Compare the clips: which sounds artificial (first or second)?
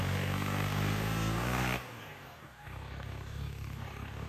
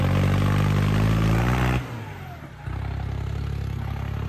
first